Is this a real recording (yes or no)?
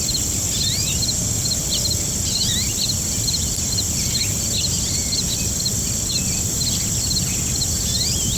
yes